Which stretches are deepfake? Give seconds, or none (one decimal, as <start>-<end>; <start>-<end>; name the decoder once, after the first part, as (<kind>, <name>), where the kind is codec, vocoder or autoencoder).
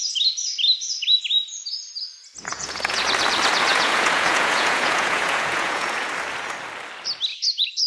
2.5-3.0 (vocoder, Vocos); 3.7-6.1; 7.3-7.9